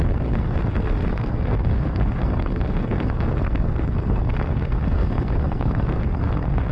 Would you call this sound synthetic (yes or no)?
yes